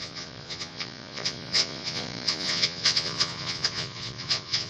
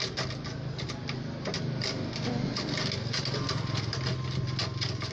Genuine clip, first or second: second